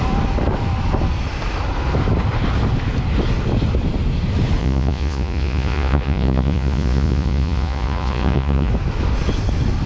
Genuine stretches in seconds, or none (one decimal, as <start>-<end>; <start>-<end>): 0.0-4.6; 8.7-9.9